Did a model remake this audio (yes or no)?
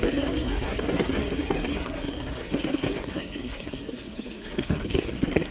yes